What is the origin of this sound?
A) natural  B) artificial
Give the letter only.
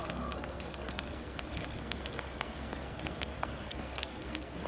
B